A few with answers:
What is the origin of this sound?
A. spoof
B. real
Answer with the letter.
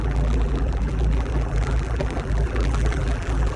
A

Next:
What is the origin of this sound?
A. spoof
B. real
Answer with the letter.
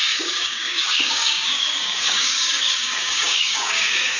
A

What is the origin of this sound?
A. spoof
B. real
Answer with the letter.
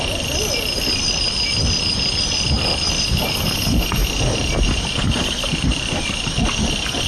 B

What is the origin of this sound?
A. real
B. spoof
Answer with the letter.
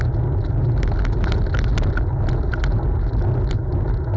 A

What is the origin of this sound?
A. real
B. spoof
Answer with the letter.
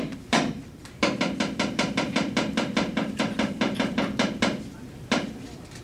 B